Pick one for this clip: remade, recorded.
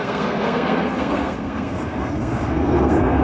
remade